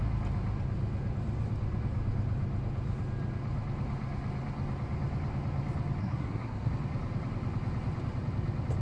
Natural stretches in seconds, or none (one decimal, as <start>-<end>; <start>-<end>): 0.0-6.0; 6.7-8.8